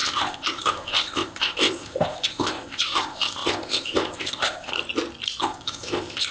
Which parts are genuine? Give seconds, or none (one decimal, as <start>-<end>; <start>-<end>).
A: 4.7-5.4